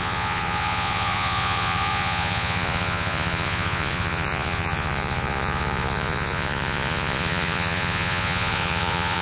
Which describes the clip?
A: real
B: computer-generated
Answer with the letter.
B